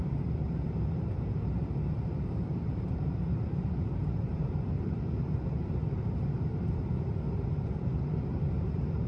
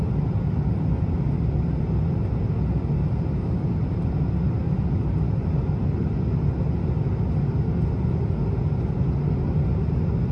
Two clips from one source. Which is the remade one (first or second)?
first